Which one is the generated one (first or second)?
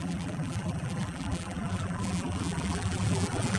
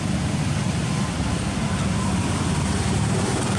first